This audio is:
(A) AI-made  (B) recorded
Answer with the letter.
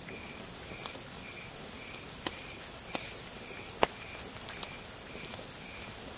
B